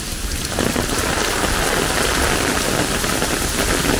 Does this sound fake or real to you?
real